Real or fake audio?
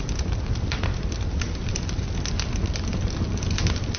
real